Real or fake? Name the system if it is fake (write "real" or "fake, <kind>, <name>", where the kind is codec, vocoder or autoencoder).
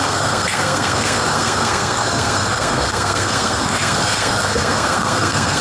fake, codec, SNAC